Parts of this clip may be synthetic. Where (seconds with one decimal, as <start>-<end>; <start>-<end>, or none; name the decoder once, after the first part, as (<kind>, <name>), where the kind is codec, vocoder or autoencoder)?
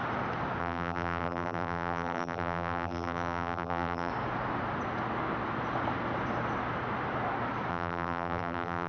0.6-4.1 (vocoder, BigVGAN v2); 7.7-8.9